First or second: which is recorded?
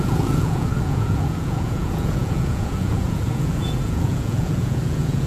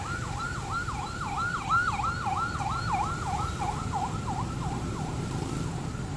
second